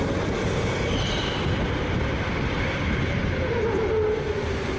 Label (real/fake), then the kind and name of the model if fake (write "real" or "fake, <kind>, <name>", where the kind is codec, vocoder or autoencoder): real